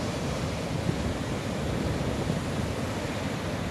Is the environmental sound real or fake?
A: real